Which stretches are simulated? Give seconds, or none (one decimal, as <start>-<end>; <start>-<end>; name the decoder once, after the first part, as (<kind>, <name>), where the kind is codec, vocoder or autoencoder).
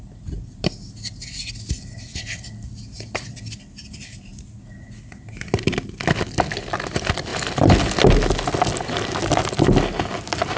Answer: none